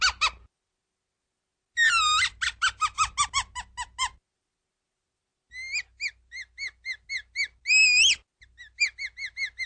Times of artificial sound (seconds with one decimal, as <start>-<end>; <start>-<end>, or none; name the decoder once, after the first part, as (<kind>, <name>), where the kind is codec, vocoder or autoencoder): none